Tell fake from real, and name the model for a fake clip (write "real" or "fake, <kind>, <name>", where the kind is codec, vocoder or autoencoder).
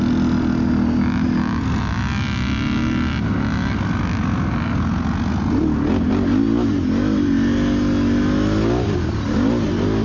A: real